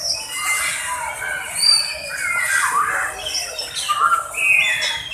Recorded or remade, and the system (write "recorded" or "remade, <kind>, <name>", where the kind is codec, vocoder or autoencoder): recorded